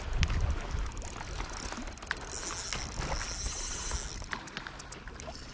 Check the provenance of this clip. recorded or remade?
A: recorded